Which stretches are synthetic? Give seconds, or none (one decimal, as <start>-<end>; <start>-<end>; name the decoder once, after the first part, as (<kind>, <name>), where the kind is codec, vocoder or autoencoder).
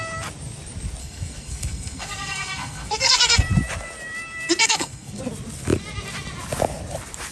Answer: 1.0-3.4 (codec, SNAC); 4.6-5.2